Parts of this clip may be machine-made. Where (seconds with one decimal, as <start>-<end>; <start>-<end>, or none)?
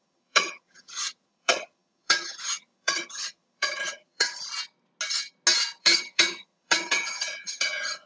0.0-4.4; 5.8-8.1